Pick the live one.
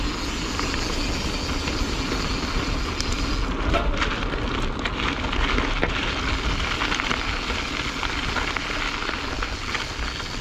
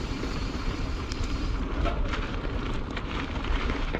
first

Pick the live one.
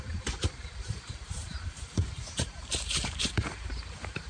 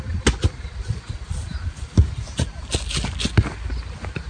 second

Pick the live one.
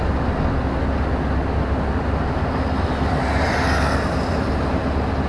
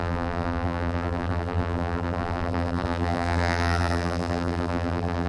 first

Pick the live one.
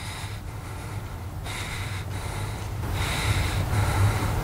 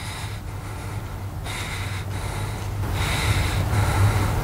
second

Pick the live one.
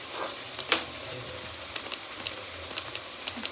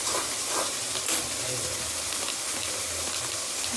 second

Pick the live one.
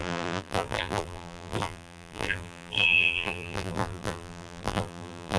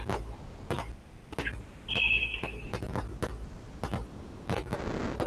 second